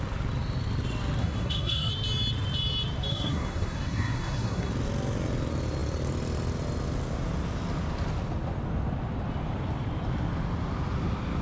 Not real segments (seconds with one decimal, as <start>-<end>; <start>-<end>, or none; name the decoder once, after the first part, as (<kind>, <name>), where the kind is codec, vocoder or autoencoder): 1.2-1.9 (codec, SNAC); 3.1-4.7